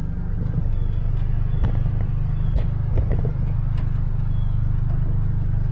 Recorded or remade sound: recorded